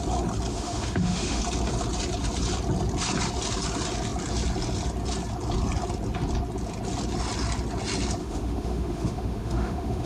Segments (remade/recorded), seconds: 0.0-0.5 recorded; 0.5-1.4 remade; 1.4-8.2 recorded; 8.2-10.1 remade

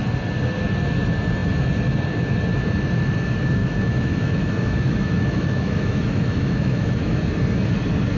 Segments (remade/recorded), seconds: 0.0-3.6 recorded; 3.6-7.2 remade; 7.2-8.2 recorded

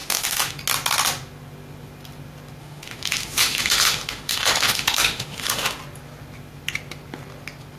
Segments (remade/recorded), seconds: 0.0-0.6 remade; 0.6-2.6 recorded; 2.6-5.8 remade; 5.8-7.8 recorded